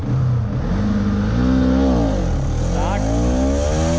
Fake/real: real